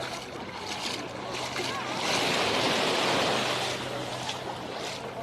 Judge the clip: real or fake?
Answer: real